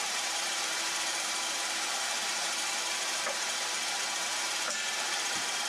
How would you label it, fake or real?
fake